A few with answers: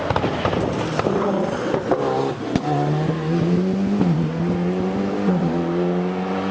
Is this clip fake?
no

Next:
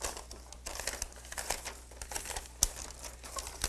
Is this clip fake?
no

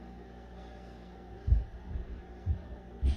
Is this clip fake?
yes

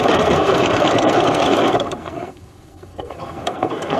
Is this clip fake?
yes